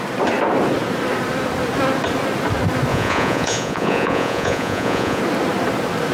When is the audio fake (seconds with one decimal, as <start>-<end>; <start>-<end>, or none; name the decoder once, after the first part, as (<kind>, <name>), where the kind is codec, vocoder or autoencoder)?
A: 2.9-5.2 (vocoder, Vocos)